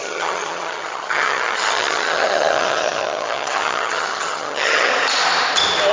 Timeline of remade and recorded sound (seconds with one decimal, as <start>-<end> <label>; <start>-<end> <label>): 0.0-4.9 remade; 4.9-5.9 recorded